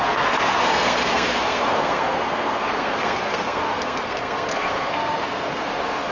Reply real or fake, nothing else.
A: fake